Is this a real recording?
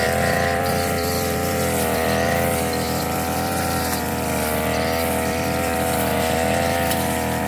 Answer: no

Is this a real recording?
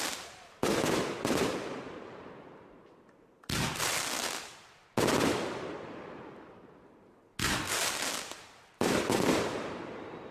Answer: yes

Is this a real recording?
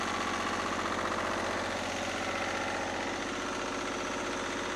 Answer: yes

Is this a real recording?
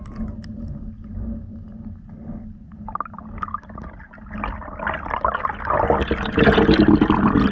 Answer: yes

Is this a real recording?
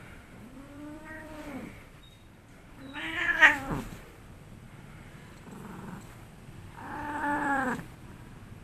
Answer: no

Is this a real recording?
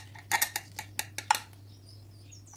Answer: yes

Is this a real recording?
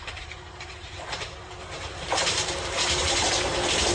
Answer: no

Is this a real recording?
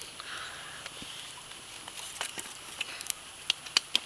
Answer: yes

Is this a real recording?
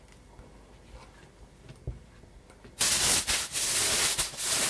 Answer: yes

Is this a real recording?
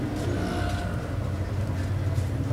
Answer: yes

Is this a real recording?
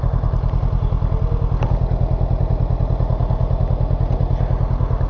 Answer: yes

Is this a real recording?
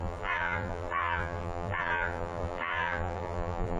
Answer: no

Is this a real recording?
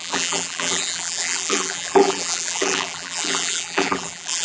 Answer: no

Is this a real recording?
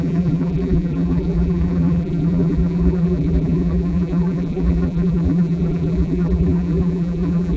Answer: no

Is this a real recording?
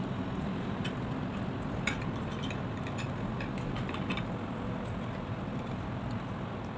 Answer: no